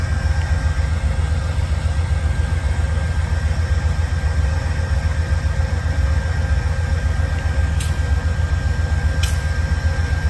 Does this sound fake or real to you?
real